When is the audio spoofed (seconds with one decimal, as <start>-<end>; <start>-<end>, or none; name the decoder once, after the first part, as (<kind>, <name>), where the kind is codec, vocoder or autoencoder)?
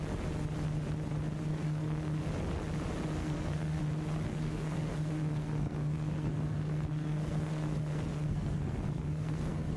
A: 1.5-2.2 (codec, SNAC); 3.2-3.8; 4.3-9.8